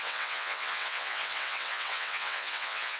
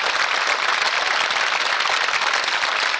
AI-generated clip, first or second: first